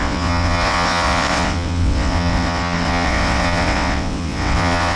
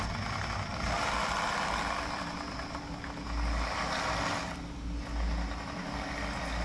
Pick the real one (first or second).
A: second